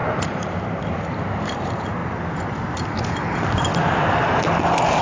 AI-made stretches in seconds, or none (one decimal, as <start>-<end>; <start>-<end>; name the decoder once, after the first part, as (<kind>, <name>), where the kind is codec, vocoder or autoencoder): 0.0-2.0 (vocoder, BigVGAN v2)

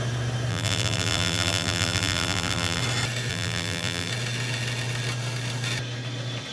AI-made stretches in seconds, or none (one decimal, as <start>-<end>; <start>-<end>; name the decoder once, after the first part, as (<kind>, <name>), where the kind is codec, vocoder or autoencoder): 0.5-2.8 (vocoder, BigVGAN v2); 3.3-4.1